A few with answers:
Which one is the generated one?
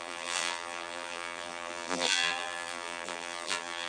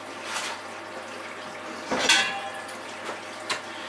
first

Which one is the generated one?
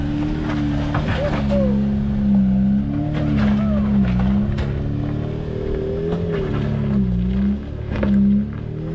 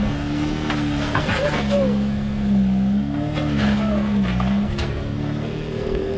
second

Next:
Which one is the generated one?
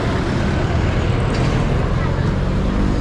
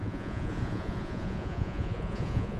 second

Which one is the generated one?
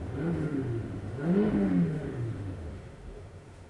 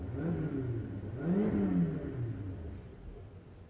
first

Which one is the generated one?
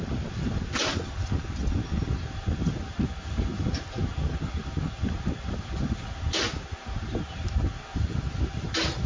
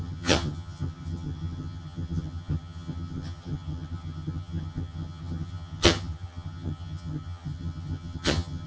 second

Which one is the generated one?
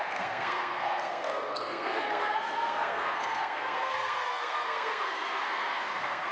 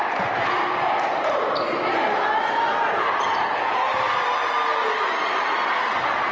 first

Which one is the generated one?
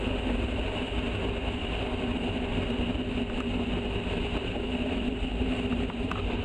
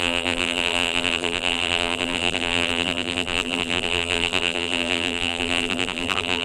second